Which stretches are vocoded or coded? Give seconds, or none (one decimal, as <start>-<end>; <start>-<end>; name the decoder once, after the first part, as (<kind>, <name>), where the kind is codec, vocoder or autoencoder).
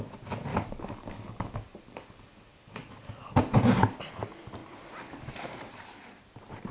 0.5-3.0 (codec, DAC)